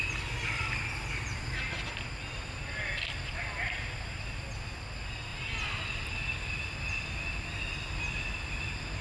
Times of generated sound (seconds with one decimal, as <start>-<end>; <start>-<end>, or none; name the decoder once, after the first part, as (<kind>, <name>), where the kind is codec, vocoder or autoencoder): none